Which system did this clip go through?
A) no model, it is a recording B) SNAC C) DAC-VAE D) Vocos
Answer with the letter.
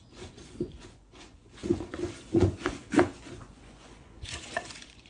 D